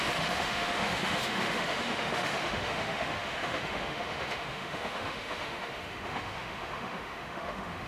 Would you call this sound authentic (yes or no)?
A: no